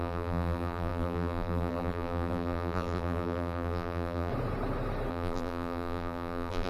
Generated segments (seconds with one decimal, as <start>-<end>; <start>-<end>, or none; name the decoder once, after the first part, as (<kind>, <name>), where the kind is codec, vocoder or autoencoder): 0.0-4.3 (vocoder, BigVGAN v2); 5.1-6.7